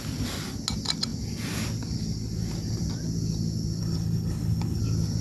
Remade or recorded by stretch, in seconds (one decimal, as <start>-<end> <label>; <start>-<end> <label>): 0.0-3.8 recorded; 3.8-4.8 remade; 4.8-5.2 recorded